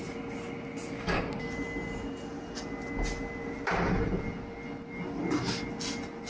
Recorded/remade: recorded